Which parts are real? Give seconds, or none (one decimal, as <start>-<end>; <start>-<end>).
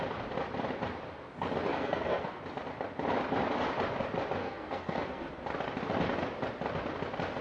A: 0.0-1.7; 2.4-4.4; 5.3-7.4